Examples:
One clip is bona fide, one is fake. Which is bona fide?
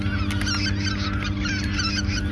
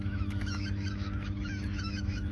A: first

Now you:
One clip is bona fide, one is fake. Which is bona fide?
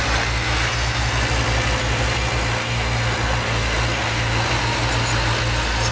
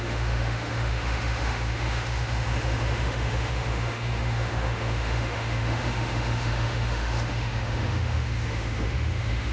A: first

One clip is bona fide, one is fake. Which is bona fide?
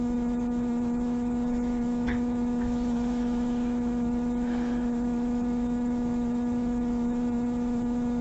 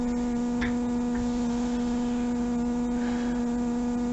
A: second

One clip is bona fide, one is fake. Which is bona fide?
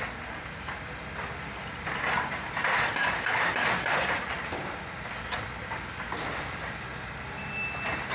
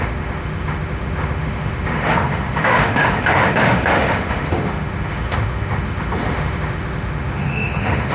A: first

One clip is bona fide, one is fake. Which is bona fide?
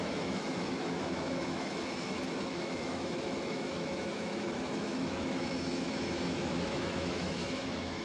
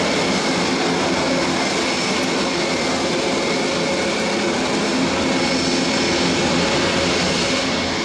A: second